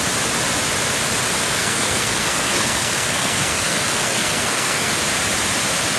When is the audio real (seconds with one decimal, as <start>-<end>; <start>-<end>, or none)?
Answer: 0.0-1.4; 4.9-6.0